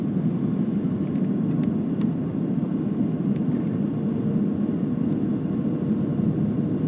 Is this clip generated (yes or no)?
no